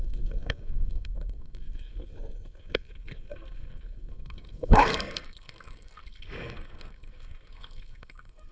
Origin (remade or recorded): remade